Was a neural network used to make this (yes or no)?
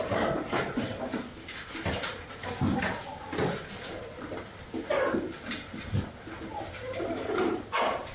no